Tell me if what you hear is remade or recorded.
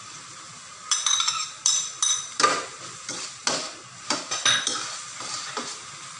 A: recorded